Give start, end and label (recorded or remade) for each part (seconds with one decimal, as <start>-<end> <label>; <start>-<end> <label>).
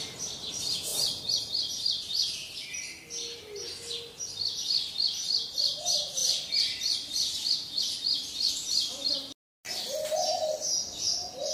0.0-0.9 recorded; 0.9-1.4 remade; 1.4-6.2 recorded; 6.2-7.8 remade; 7.8-11.5 recorded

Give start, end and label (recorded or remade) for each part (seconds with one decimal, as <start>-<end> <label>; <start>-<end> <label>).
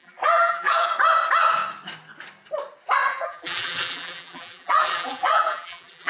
0.0-0.9 remade; 0.9-3.1 recorded; 3.1-6.1 remade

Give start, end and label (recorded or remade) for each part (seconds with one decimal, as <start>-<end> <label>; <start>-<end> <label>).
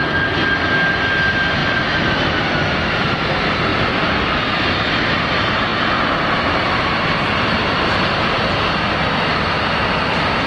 0.0-3.7 recorded; 3.7-4.5 remade; 4.5-10.5 recorded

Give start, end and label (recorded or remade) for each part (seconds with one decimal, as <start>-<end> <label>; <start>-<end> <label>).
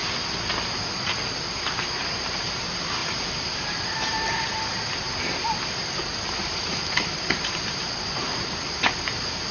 0.0-0.9 recorded; 0.9-9.5 remade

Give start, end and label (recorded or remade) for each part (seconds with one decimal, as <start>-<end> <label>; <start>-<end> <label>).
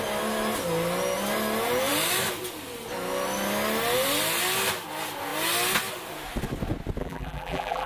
0.0-7.0 recorded; 7.0-7.9 remade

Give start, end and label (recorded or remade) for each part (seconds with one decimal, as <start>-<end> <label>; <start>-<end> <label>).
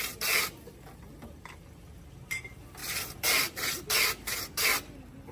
0.0-5.3 recorded